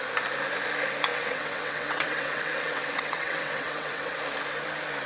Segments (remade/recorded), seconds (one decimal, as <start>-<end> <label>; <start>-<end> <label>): 0.0-1.1 recorded; 1.1-4.2 remade; 4.2-5.1 recorded